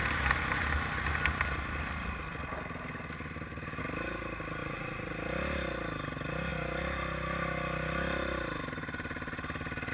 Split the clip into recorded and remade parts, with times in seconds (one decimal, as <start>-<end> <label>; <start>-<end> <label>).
0.0-4.6 recorded; 4.6-5.1 remade; 5.1-9.9 recorded